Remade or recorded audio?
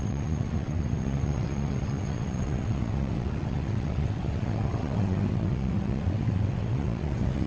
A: remade